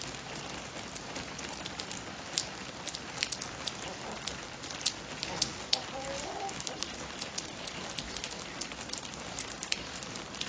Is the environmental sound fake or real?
real